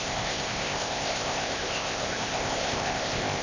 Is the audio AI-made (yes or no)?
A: yes